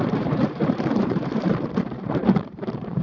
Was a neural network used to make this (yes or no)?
yes